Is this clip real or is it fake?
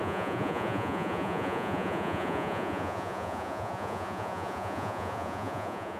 fake